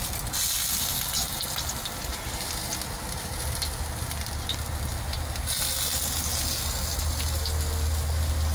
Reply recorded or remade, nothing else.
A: recorded